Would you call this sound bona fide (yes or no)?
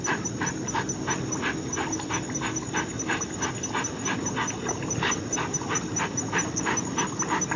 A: yes